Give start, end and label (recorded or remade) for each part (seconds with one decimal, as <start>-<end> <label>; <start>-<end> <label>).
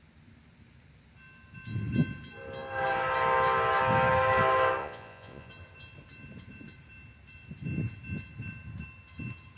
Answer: 0.0-4.8 recorded; 4.8-5.5 remade; 5.5-9.6 recorded